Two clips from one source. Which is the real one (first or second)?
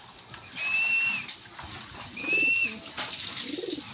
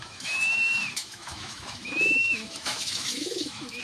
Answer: first